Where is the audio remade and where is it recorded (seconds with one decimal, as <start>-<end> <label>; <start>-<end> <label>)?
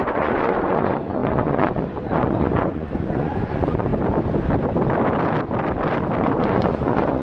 0.0-3.9 remade; 3.9-6.2 recorded; 6.2-7.2 remade